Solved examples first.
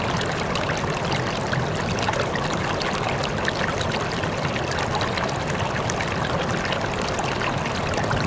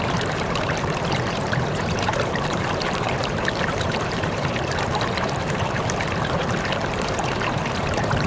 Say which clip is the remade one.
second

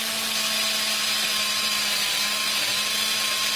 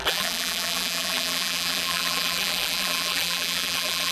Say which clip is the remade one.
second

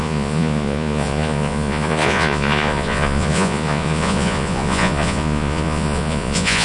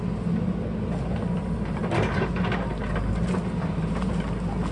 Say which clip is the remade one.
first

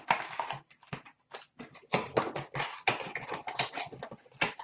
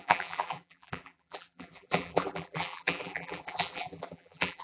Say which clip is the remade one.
second